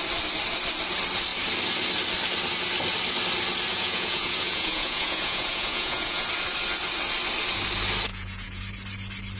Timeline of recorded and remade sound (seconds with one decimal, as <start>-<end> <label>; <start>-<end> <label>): 0.0-3.7 recorded; 3.7-6.3 remade; 6.3-8.1 recorded; 8.1-8.6 remade; 8.6-9.4 recorded